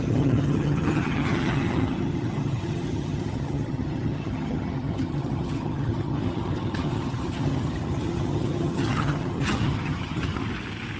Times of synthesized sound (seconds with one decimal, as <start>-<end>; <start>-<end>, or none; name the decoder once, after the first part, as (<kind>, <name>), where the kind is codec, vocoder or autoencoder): 0.0-10.4 (vocoder, HiFi-GAN)

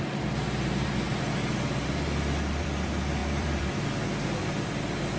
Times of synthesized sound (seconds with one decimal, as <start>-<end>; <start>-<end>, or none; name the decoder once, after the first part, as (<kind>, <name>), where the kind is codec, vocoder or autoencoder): 3.2-3.8 (vocoder, BigVGAN v2)

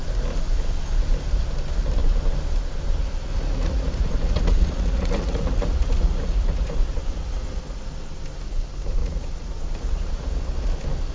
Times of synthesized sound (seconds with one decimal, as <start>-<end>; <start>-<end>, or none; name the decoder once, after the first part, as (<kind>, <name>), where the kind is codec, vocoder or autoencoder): 3.3-7.6 (vocoder, Vocos); 9.0-10.4

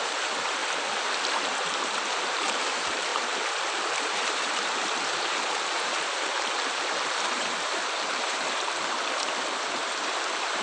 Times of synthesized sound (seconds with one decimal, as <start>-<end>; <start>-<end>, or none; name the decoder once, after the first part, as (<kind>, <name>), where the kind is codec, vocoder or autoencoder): 0.0-0.6 (vocoder, BigVGAN v2); 2.3-10.6

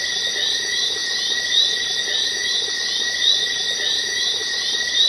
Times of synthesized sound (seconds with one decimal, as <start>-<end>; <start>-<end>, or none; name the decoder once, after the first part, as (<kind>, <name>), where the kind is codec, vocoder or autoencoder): 1.0-2.0 (vocoder, BigVGAN v2); 4.4-5.1

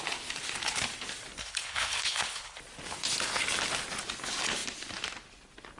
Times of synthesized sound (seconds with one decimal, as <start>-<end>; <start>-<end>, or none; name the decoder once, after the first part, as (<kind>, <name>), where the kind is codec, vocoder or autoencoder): 1.4-2.6 (codec, HILCodec)

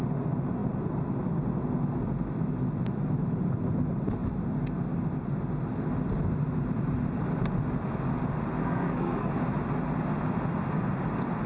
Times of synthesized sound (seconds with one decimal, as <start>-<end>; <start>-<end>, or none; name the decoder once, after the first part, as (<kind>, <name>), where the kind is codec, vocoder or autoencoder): 8.6-9.3 (codec, SNAC)

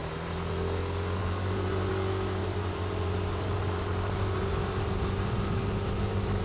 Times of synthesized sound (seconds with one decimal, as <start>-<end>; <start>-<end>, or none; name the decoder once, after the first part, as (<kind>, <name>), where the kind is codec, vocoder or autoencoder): 0.0-0.5 (vocoder, BigVGAN v2); 1.2-1.9; 2.4-6.4